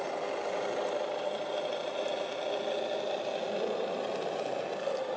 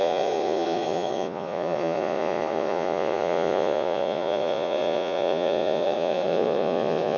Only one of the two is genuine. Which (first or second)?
first